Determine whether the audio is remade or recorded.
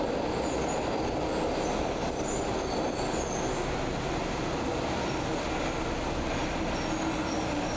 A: recorded